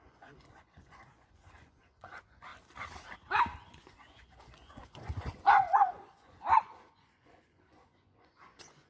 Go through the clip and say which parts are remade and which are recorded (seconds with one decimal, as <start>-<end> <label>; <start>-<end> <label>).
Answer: 0.0-2.5 remade; 2.5-3.6 recorded; 3.6-8.9 remade